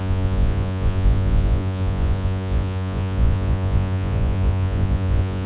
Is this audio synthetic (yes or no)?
yes